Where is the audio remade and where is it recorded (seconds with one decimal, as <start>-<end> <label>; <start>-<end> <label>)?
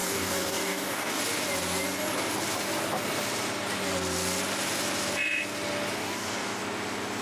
0.0-1.2 remade; 1.2-6.0 recorded; 6.0-6.6 remade; 6.6-7.2 recorded